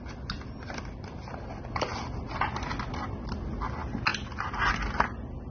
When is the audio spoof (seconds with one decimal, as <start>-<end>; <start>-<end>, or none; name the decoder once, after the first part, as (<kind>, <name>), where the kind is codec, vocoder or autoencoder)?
none